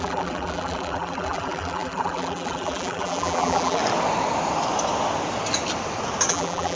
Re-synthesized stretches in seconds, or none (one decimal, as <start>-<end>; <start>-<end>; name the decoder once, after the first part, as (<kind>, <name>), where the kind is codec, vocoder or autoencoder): 0.0-3.8 (vocoder, BigVGAN v2); 6.3-6.8